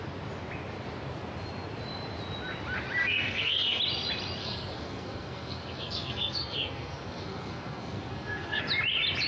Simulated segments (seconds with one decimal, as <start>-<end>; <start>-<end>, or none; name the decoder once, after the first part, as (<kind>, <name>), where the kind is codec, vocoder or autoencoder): 3.0-3.8 (codec, SNAC); 4.4-8.6

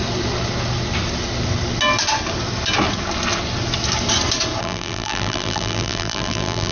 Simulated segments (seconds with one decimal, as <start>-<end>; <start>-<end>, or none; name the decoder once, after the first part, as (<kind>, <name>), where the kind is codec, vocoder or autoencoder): 4.6-6.7 (vocoder, BigVGAN v2)

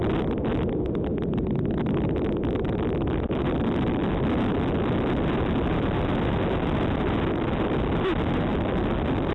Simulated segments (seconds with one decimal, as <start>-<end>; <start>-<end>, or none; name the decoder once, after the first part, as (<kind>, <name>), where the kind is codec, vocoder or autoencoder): none